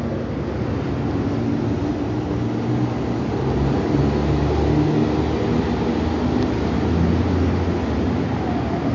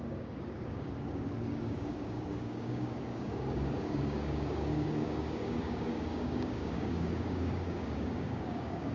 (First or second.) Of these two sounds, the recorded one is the first